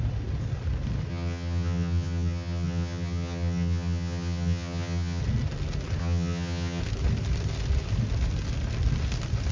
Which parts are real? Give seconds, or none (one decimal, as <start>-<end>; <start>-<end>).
0.0-1.1; 5.2-6.0; 6.8-9.5

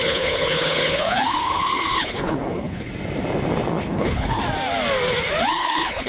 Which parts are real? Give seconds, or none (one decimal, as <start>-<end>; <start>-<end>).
2.9-3.8; 4.4-5.5